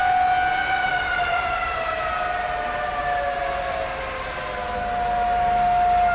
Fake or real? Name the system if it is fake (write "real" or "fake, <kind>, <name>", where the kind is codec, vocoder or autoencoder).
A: real